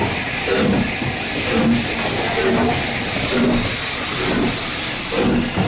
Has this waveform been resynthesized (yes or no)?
no